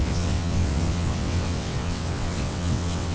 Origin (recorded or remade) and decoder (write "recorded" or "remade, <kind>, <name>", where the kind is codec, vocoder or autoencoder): remade, vocoder, WaveNeXt